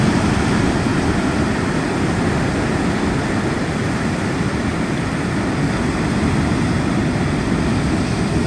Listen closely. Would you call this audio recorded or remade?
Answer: recorded